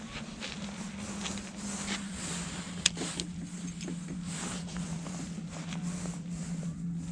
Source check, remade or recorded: recorded